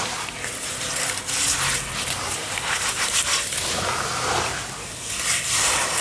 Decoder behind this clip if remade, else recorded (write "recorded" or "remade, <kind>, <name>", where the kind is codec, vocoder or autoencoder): recorded